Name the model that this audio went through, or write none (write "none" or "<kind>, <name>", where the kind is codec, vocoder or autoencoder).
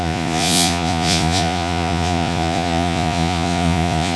vocoder, Vocos